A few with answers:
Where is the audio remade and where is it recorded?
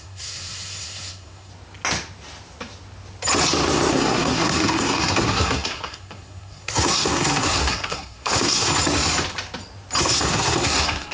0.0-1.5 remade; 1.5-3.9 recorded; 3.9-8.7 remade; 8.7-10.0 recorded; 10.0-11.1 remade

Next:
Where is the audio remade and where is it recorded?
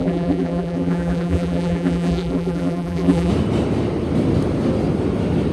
0.0-3.3 remade; 3.3-5.5 recorded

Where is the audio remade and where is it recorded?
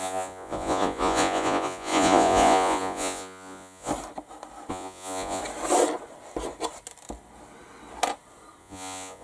0.0-3.9 remade; 3.9-4.7 recorded; 4.7-5.4 remade; 5.4-8.6 recorded; 8.6-9.2 remade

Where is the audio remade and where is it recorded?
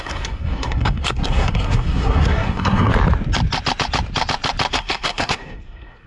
0.0-2.9 remade; 2.9-4.7 recorded; 4.7-6.1 remade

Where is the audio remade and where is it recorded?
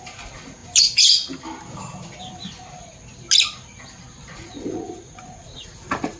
0.0-4.3 recorded; 4.3-6.2 remade